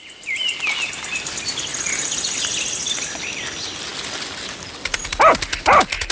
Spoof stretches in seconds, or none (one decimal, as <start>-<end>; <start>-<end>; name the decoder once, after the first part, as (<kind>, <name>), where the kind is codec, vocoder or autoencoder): none